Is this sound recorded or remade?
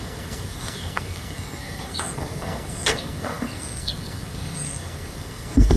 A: remade